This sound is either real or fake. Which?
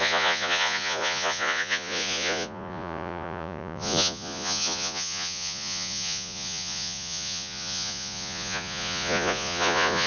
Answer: fake